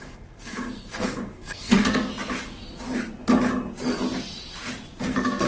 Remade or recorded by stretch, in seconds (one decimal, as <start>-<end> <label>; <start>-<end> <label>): 0.0-2.1 remade; 2.1-5.0 recorded; 5.0-5.5 remade